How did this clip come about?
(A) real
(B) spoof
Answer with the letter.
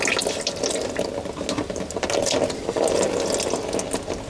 A